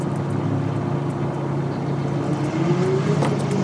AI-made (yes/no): no